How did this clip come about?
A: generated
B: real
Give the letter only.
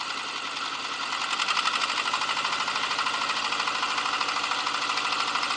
B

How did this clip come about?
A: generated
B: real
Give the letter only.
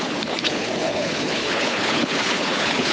A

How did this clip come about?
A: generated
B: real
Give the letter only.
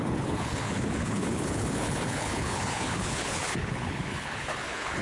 A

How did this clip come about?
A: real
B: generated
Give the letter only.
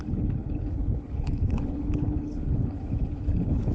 B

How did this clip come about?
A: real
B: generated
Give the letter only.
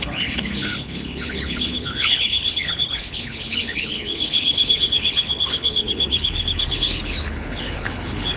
B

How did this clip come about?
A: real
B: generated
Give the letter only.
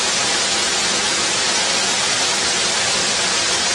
A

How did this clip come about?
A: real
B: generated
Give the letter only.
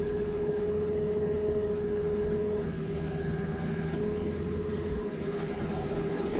B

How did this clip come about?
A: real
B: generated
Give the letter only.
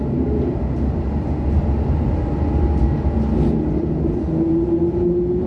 A